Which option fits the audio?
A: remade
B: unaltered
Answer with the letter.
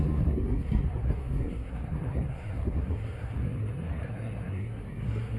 A